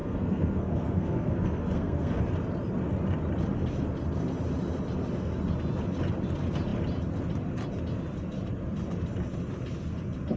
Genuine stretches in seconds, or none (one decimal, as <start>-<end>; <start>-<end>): 2.2-10.4